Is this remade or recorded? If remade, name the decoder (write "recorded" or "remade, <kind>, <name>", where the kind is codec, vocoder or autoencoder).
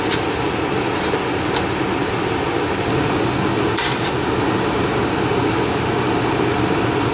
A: recorded